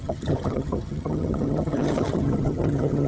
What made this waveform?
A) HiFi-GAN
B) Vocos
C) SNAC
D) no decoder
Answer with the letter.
A